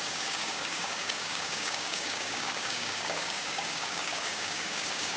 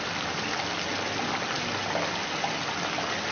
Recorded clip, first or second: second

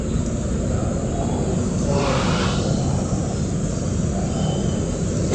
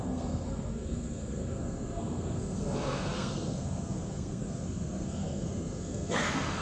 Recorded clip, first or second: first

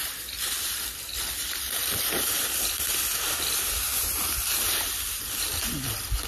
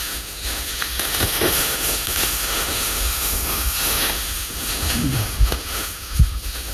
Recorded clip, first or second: first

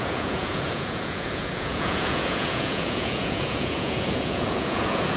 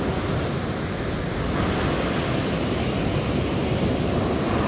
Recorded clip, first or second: second